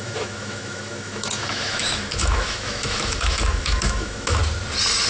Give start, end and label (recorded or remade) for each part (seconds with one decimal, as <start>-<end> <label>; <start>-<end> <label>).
0.0-4.4 remade; 4.4-5.1 recorded